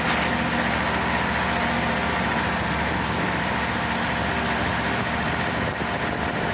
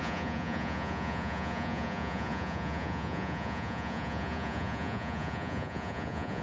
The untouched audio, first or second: first